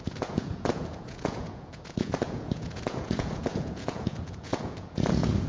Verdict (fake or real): fake